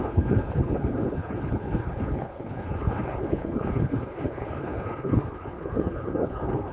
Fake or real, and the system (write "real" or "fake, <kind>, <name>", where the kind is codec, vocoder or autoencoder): fake, codec, HILCodec